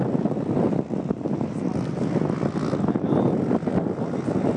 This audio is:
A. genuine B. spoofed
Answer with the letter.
A